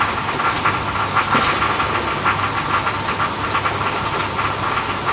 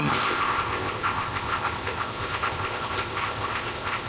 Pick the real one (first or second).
first